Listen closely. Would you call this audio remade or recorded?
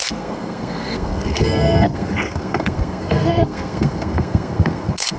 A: remade